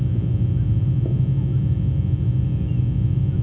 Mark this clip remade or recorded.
recorded